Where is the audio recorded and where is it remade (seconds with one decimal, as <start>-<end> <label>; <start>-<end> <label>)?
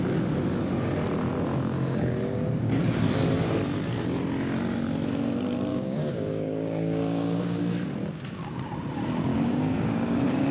0.0-1.5 recorded; 1.5-2.7 remade; 2.7-5.7 recorded; 5.7-7.6 remade; 7.6-9.3 recorded; 9.3-10.5 remade